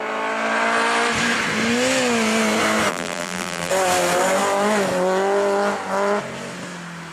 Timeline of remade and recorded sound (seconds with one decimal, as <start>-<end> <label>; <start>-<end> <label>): 0.0-2.9 recorded; 2.9-3.7 remade; 3.7-7.1 recorded